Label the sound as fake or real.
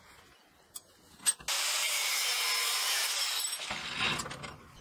real